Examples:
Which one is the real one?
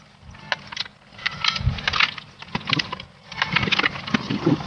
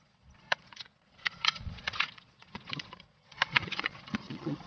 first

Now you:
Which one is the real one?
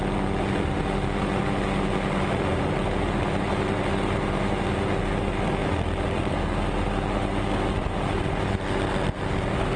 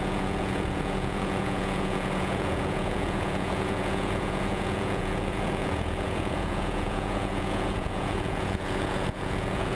first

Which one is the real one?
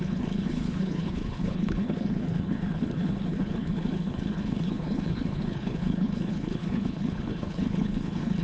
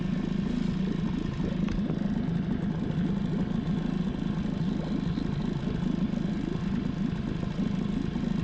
second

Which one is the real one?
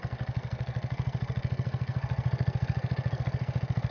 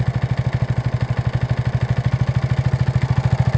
second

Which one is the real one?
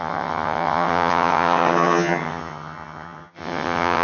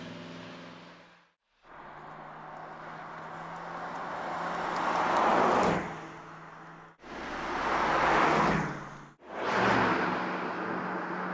second